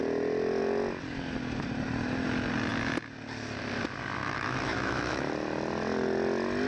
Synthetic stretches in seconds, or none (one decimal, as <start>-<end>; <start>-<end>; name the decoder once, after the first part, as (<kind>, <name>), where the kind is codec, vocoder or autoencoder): 4.2-5.3 (autoencoder, DAC-VAE)